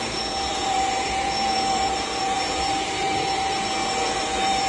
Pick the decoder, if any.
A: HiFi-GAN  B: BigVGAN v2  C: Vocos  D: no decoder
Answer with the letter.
C